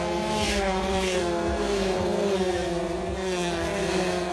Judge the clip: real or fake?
fake